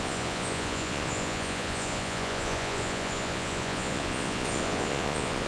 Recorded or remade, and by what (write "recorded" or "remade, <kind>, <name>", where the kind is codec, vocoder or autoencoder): remade, vocoder, Vocos